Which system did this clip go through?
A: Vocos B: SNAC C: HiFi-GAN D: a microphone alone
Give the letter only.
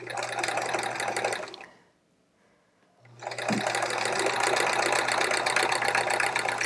D